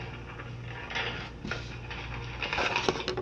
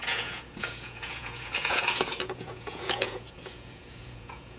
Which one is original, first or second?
first